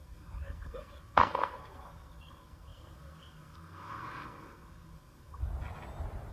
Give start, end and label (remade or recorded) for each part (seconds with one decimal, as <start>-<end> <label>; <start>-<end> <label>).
0.0-5.4 remade; 5.4-6.3 recorded